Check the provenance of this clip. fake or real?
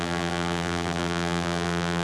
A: fake